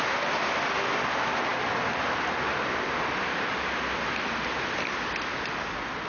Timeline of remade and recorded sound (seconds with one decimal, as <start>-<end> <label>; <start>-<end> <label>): 0.0-6.1 remade